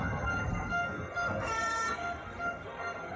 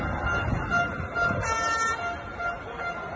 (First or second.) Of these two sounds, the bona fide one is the second